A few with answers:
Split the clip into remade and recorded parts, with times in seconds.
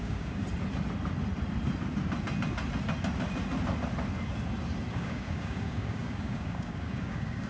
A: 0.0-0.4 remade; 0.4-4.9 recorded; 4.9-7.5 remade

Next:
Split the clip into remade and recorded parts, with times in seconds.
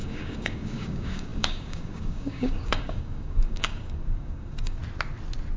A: 0.0-4.8 remade; 4.8-5.6 recorded